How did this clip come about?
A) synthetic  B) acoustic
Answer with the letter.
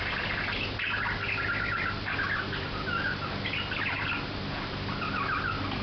B